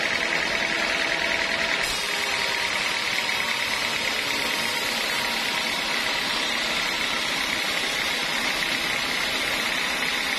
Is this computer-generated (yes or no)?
no